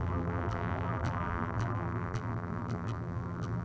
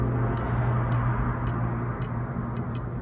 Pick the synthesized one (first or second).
first